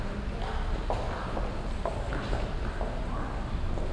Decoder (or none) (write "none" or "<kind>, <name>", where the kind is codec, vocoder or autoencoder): none